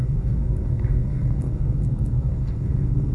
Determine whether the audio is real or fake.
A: fake